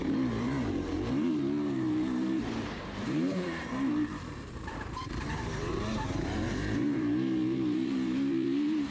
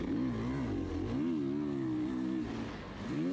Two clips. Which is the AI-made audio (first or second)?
first